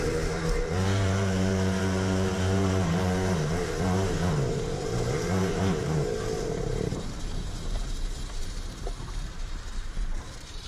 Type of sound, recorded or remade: remade